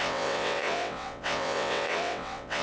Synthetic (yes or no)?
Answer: yes